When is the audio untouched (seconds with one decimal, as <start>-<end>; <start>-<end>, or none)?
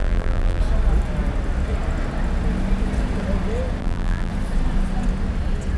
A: 0.6-3.8; 4.3-5.8